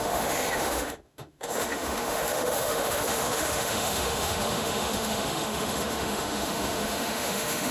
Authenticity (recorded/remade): remade